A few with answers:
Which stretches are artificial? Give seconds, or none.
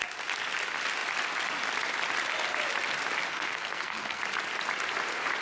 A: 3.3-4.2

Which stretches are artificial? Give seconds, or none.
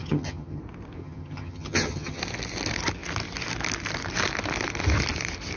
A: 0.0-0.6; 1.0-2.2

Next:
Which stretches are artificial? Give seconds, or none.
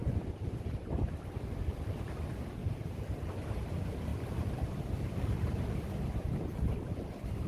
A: 0.0-7.5